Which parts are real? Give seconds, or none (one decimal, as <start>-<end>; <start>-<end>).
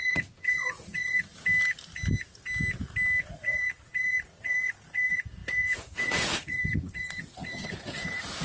1.3-3.2